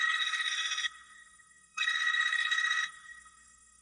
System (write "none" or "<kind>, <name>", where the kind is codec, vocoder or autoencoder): codec, SNAC